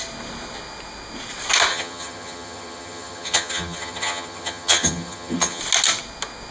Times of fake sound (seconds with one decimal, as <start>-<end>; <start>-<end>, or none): 1.7-5.6